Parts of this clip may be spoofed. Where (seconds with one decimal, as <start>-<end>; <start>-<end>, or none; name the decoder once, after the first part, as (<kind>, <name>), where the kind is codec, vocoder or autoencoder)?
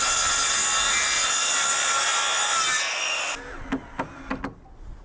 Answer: none